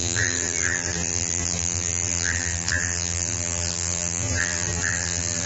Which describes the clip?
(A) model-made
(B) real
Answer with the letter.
A